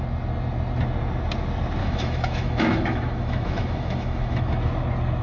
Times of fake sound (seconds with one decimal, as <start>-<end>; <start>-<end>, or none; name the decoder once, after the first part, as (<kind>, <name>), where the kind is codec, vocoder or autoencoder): 1.8-4.6 (autoencoder, DAC-VAE)